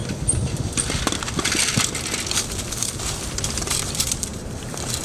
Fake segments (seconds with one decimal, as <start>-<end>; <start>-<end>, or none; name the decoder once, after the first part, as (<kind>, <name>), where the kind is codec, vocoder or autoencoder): 2.9-4.3 (vocoder, BigVGAN v2)